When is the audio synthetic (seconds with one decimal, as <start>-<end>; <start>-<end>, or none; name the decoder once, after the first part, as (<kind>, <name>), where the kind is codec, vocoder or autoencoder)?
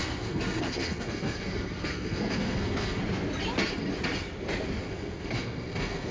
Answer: 0.0-3.0 (codec, SNAC); 4.8-6.1